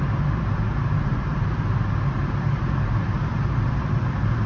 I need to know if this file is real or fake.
real